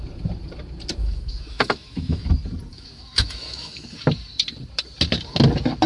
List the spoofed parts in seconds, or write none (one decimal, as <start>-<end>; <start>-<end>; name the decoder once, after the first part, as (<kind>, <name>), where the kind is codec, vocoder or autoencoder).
1.0-2.3 (autoencoder, DAC-VAE); 2.7-4.0